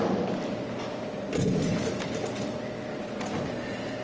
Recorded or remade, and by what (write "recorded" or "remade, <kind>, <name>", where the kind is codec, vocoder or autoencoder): recorded